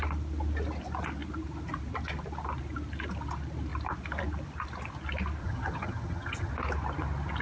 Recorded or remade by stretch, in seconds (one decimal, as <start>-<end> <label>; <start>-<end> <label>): 0.0-5.4 recorded; 5.4-6.5 remade; 6.5-7.4 recorded